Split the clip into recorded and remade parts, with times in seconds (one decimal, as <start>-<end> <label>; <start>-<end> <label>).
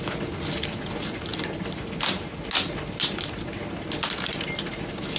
0.0-5.2 recorded